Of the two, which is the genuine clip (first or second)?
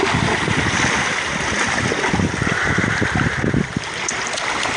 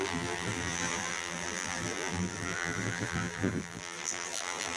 first